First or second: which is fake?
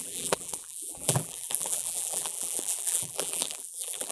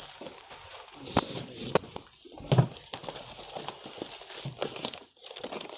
first